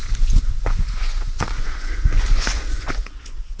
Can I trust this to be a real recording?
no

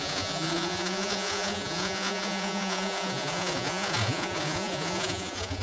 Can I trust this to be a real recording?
no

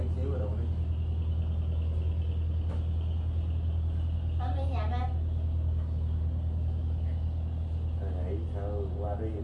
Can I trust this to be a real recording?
yes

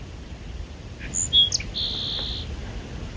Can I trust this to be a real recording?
yes